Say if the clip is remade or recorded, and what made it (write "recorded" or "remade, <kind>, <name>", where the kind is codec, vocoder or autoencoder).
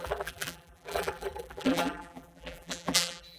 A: remade, vocoder, BigVGAN v2